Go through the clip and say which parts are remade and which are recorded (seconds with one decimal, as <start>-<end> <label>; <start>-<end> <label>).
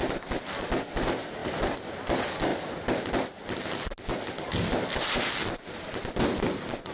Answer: 0.0-6.9 recorded